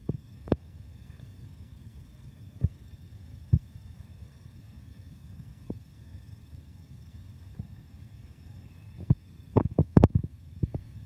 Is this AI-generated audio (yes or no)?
yes